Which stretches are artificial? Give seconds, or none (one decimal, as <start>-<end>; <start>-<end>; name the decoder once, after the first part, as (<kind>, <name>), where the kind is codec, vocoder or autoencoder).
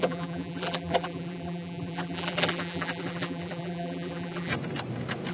0.0-4.5 (vocoder, BigVGAN v2)